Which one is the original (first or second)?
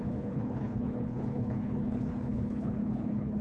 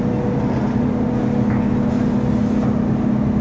second